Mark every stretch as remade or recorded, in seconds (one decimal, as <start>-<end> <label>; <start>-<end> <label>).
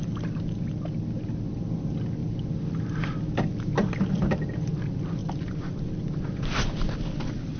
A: 0.0-5.2 recorded; 5.2-5.7 remade; 5.7-7.6 recorded